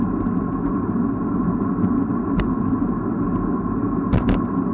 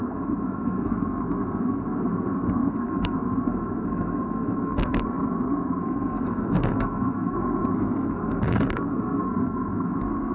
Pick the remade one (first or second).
second